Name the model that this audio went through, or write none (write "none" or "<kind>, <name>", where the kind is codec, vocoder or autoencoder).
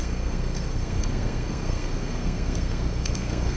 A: codec, SNAC